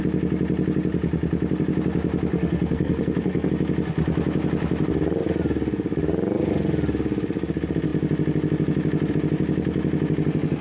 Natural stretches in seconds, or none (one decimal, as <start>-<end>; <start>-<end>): 0.0-2.3; 3.5-10.6